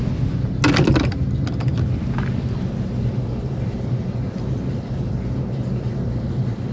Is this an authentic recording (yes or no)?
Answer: yes